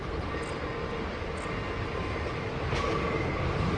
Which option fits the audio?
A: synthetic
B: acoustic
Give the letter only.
B